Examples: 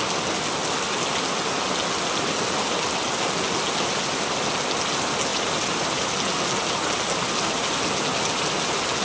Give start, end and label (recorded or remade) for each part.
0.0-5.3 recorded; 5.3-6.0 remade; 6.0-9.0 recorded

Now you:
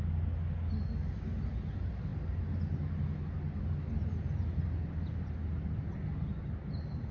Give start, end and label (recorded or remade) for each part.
0.0-7.1 recorded